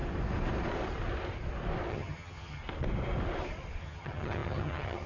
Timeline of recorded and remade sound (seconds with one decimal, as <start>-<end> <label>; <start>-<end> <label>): 0.0-1.9 recorded; 1.9-2.6 remade; 2.6-3.8 recorded; 3.8-5.1 remade